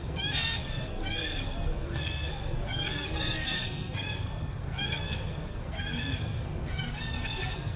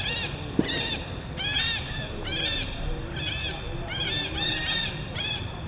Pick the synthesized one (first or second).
first